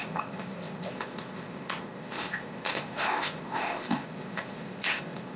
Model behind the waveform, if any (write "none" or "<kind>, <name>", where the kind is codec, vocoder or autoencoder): codec, ZipCodec